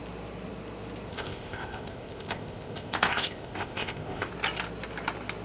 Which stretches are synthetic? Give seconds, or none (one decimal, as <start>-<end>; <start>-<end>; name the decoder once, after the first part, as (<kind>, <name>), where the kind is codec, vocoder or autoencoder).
1.1-4.3 (codec, ZipCodec)